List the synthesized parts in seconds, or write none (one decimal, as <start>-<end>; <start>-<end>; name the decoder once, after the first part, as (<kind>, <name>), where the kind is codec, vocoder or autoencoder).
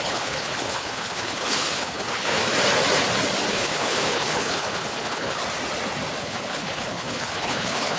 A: 0.0-2.4 (codec, HILCodec); 3.5-5.4; 6.2-8.0